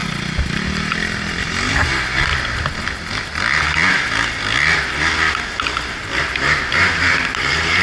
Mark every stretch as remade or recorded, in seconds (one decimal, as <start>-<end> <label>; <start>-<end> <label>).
0.0-1.7 recorded; 1.7-2.3 remade; 2.3-5.9 recorded; 5.9-7.8 remade